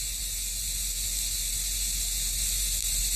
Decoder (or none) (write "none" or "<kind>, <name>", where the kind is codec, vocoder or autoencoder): none